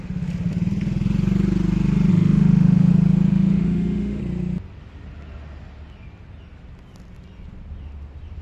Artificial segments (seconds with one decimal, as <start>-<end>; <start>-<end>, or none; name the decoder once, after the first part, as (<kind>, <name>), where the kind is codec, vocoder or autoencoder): 2.1-2.9 (autoencoder, DAC-VAE); 3.3-4.2